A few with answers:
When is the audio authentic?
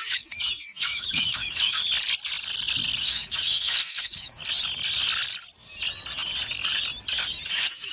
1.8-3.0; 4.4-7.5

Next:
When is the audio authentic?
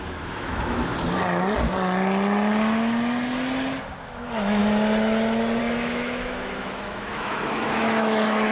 0.9-4.0; 4.6-5.6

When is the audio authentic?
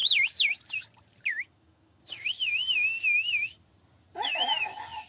0.0-1.3; 2.0-5.1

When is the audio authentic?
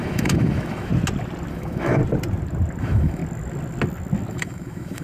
0.9-1.5; 2.0-2.8; 3.2-4.3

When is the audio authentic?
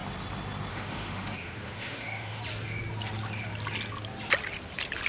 0.0-0.7; 2.4-5.1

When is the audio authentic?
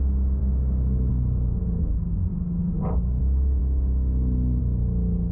0.0-0.4; 1.1-3.6; 4.6-5.3